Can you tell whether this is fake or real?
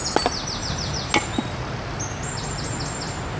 real